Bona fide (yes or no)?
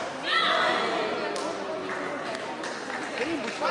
yes